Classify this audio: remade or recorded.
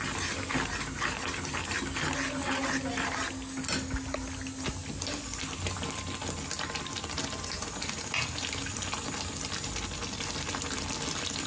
recorded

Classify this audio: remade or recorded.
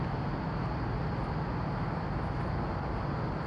recorded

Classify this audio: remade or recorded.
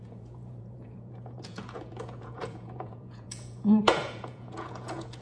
remade